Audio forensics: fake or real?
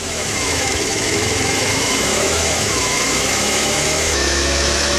fake